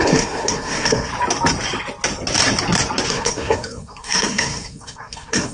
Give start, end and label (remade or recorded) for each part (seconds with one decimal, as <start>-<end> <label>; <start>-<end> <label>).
0.0-1.1 remade; 1.1-3.1 recorded; 3.1-5.5 remade